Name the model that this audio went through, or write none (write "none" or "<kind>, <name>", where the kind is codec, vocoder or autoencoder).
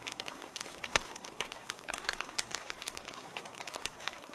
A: codec, SNAC